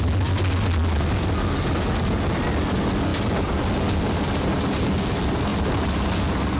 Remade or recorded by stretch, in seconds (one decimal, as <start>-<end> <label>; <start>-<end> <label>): 0.0-6.6 recorded